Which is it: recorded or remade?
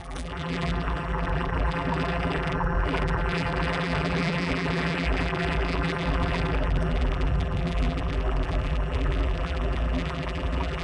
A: remade